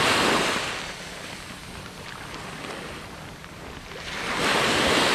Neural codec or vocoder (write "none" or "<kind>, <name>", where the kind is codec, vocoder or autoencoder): none